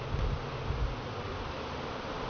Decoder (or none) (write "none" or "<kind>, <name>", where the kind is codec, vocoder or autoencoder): none